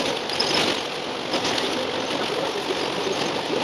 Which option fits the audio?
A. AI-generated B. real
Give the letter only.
B